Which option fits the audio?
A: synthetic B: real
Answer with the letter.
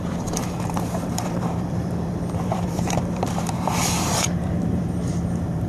A